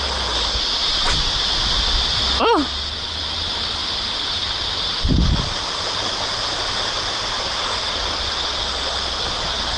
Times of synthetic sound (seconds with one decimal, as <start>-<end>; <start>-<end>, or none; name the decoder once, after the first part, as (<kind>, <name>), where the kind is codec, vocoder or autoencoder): none